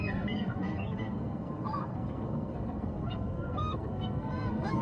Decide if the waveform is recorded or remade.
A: remade